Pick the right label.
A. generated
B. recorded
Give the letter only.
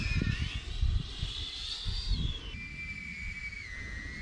B